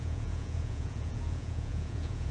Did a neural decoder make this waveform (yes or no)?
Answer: yes